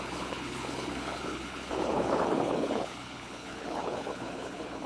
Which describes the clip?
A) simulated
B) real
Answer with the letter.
A